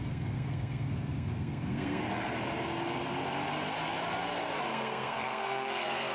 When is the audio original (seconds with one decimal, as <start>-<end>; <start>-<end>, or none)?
2.0-4.7